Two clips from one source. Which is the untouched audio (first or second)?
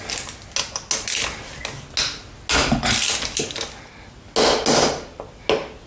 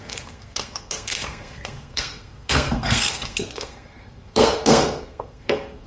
first